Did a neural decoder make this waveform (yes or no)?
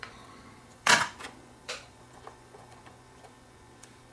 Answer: yes